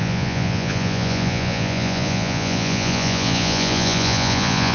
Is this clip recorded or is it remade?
remade